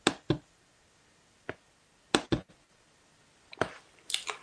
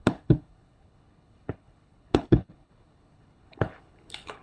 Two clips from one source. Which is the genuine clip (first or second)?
first